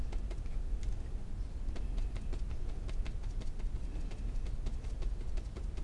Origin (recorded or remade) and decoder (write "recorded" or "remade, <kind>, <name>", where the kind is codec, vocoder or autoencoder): recorded